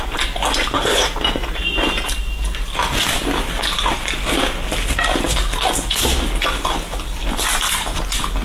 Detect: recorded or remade recorded